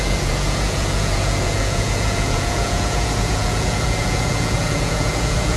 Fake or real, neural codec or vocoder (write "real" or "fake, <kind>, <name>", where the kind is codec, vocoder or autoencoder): fake, vocoder, Vocos